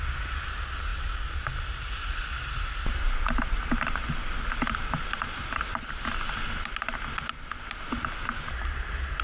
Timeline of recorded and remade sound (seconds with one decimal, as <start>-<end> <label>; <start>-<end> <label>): 0.0-9.2 recorded